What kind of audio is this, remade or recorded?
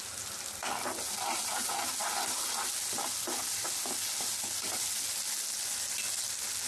recorded